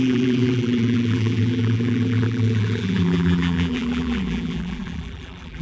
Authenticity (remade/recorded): remade